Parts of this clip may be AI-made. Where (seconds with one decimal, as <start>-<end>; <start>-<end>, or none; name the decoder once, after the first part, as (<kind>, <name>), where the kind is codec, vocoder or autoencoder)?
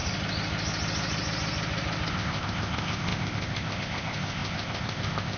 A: 2.1-5.4 (codec, ZipCodec)